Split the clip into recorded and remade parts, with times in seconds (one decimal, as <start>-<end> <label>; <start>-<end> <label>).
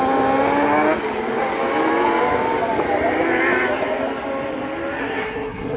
0.0-5.0 recorded; 5.0-5.8 remade